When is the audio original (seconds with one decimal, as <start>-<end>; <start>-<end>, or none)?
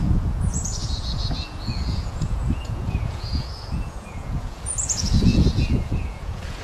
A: none